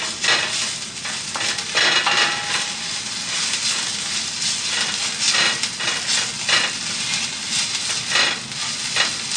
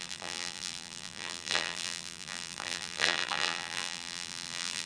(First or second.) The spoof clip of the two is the second